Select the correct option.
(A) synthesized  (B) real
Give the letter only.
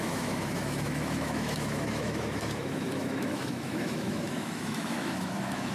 A